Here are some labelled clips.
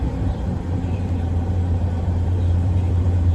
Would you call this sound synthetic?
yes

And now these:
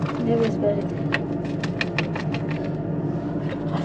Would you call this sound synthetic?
no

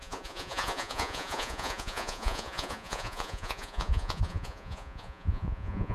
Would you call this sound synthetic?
yes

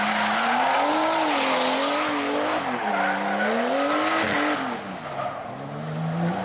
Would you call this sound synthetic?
no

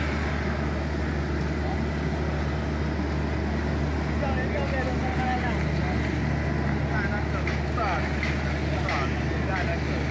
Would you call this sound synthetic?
no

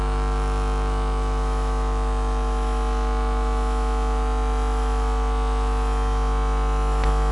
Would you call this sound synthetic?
yes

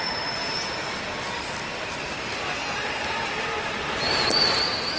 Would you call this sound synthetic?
no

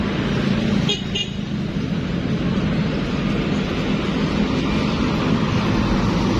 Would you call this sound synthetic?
no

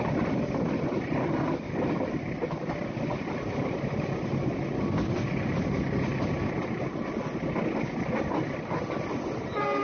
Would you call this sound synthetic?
no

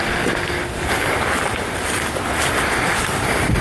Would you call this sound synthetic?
no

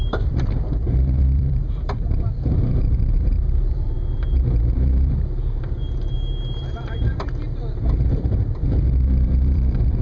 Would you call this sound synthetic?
yes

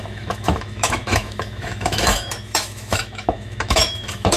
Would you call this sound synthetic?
yes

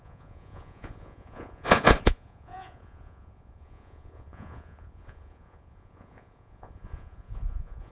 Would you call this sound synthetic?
yes